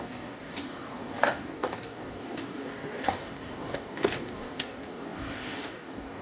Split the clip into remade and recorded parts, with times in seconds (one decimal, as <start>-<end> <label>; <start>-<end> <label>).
0.0-6.2 remade